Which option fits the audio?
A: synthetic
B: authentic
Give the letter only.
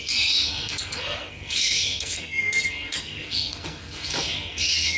A